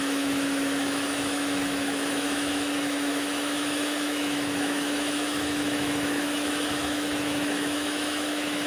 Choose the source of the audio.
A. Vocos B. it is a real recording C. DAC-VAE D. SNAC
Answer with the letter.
C